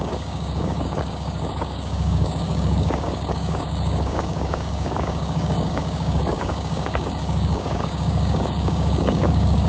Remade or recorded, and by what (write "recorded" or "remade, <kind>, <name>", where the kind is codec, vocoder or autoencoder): remade, codec, DAC